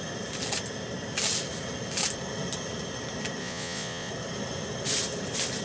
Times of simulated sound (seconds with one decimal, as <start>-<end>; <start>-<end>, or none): 3.4-4.1